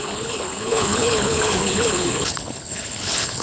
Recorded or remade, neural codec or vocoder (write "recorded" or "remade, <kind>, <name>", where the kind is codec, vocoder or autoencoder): remade, codec, HILCodec